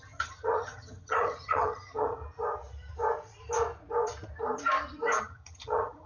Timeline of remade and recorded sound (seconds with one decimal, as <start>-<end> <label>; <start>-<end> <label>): 0.0-2.2 remade; 2.2-5.2 recorded; 5.2-6.1 remade